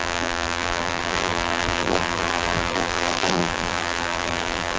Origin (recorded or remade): remade